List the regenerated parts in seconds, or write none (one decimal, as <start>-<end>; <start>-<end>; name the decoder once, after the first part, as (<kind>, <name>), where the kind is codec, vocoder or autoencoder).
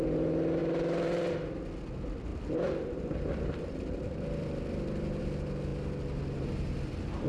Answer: 0.6-1.3 (vocoder, BigVGAN v2); 2.3-5.2